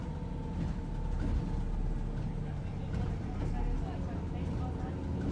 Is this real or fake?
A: real